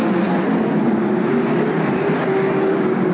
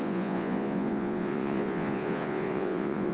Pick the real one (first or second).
first